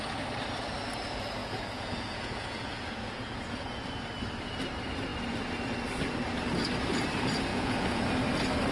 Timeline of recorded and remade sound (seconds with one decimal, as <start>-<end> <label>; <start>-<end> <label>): 0.0-1.4 recorded; 1.4-3.8 remade; 3.8-7.5 recorded; 7.5-8.1 remade; 8.1-8.7 recorded

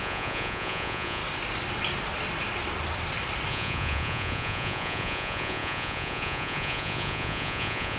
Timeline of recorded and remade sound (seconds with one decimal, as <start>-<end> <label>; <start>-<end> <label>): 0.0-1.2 remade; 1.2-3.5 recorded; 3.5-8.0 remade

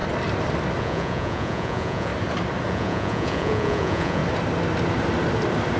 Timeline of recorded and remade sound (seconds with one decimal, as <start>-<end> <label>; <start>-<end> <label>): 0.0-0.8 recorded; 0.8-2.1 remade; 2.1-2.7 recorded; 2.7-4.2 remade; 4.2-5.8 recorded

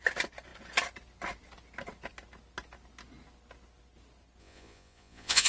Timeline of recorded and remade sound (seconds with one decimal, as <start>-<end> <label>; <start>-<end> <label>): 0.0-4.4 recorded; 4.4-5.5 remade

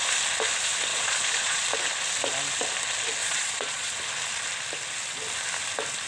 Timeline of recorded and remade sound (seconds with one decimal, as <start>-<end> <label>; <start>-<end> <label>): 0.0-0.9 recorded; 0.9-1.6 remade; 1.6-3.2 recorded; 3.2-3.9 remade; 3.9-6.1 recorded